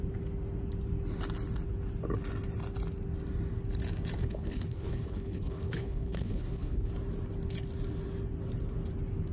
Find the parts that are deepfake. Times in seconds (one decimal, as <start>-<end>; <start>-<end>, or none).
4.2-6.9

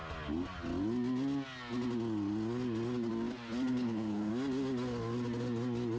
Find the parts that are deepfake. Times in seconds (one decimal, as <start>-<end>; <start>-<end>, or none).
3.7-4.3

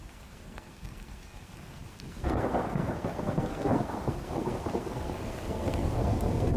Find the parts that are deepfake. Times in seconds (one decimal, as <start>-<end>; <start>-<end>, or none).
0.0-6.6

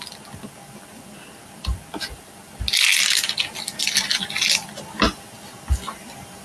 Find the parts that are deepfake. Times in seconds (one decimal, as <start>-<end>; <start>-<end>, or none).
none

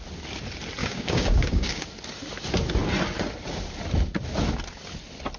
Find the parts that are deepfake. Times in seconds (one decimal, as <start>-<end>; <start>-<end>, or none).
0.8-1.9